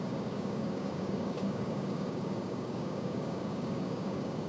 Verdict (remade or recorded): remade